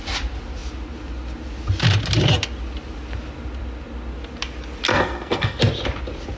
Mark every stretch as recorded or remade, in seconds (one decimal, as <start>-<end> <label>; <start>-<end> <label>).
0.0-4.9 recorded; 4.9-5.6 remade; 5.6-6.4 recorded